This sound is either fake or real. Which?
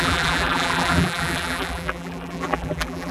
fake